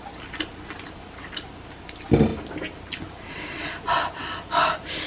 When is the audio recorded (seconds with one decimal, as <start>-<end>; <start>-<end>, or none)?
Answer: 0.0-5.1

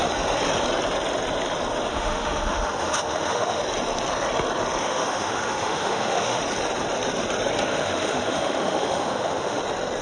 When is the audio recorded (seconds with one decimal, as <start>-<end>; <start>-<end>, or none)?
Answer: 0.0-1.9; 3.6-4.8; 6.4-7.7; 9.6-10.0

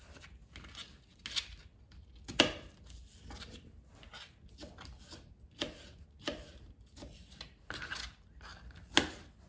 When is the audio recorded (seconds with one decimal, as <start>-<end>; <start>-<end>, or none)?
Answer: 0.0-9.5

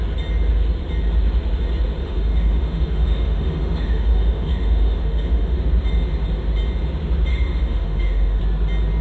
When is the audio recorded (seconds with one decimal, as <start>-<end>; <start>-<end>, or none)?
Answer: 0.0-2.0; 5.6-7.3; 8.4-9.0

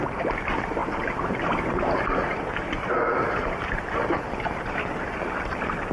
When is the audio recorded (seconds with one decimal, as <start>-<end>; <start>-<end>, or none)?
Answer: 0.0-5.9

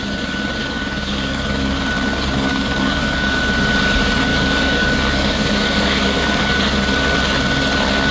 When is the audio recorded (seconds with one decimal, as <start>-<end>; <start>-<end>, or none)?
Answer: 0.0-0.6; 1.8-2.5; 3.4-4.3; 6.6-8.1

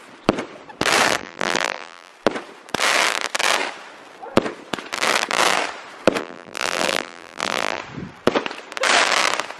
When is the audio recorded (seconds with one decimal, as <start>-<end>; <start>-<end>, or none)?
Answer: 0.0-1.2; 2.1-6.2; 7.8-9.6

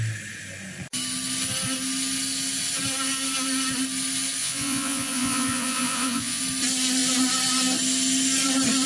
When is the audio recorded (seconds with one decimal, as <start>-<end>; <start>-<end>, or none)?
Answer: 0.0-4.4; 6.4-8.9